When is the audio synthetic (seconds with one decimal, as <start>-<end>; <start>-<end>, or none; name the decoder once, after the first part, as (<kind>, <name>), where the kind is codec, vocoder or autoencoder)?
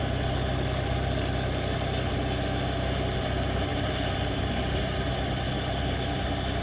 none